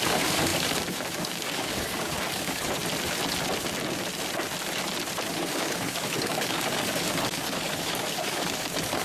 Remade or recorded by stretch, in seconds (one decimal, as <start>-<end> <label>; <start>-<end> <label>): 0.0-2.8 remade; 2.8-5.3 recorded; 5.3-9.0 remade